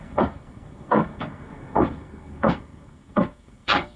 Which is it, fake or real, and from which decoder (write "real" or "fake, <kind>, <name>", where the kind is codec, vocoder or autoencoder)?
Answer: fake, codec, SNAC